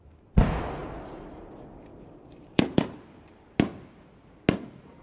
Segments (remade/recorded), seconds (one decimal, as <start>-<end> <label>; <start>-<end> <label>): 0.0-0.8 recorded; 0.8-1.5 remade; 1.5-1.9 recorded; 1.9-3.0 remade; 3.0-5.0 recorded